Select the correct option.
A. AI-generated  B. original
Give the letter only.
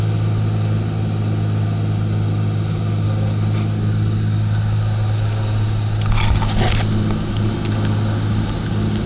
B